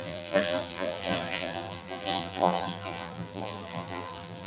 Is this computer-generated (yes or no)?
yes